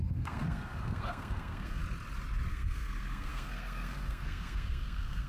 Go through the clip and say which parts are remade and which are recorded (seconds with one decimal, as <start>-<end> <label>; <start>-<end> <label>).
0.0-1.8 remade; 1.8-2.5 recorded; 2.5-5.3 remade